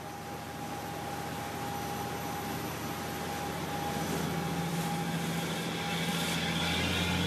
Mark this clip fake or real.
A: real